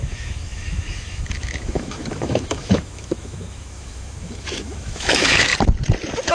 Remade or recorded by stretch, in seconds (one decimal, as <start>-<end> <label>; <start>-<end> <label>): 0.0-5.5 remade; 5.5-6.3 recorded